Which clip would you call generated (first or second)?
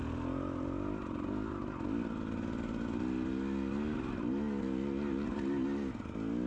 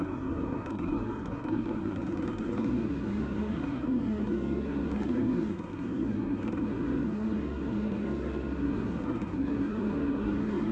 second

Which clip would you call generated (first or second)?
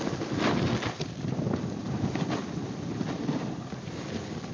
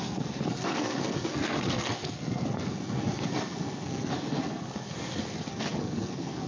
second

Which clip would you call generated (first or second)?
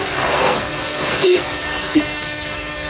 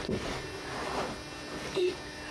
first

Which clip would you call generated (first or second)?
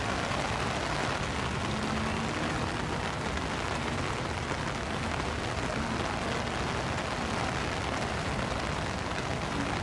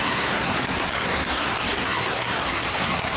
second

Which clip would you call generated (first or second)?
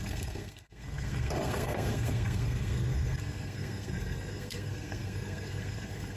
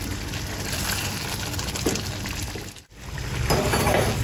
first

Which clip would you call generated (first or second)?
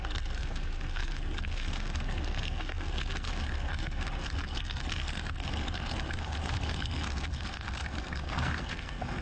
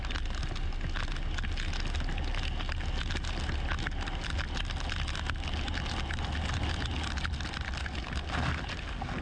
first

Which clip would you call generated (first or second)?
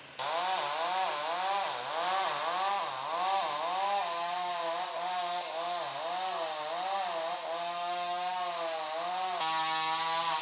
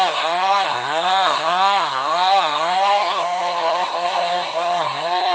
second